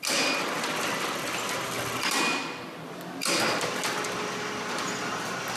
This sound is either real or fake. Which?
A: real